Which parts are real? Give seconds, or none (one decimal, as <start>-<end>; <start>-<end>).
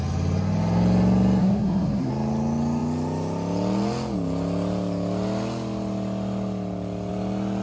0.0-1.4; 2.1-7.6